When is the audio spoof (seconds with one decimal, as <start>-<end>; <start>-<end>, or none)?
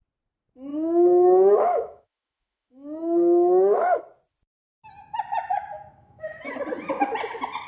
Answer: 0.7-4.0; 5.5-6.4